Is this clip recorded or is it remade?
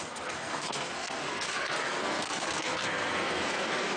remade